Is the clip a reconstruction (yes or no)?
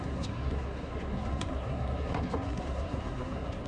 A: yes